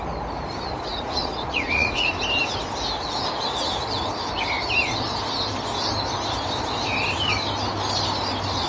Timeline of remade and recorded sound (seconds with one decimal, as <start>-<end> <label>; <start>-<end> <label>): 0.0-0.9 recorded; 0.9-2.1 remade; 2.1-8.7 recorded